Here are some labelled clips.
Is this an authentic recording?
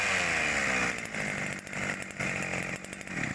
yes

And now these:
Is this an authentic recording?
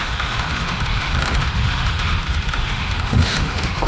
no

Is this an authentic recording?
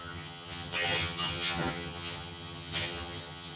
no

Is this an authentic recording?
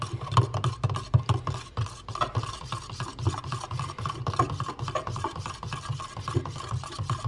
yes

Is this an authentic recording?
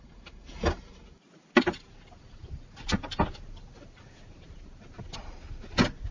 yes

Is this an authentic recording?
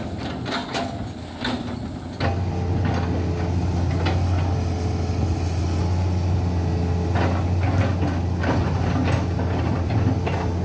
yes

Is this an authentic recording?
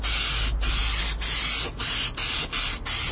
yes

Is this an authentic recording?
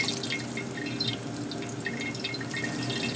yes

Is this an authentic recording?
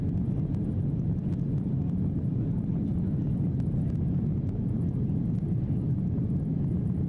yes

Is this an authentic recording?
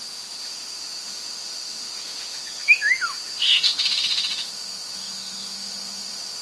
no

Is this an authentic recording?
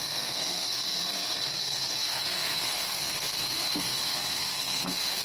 no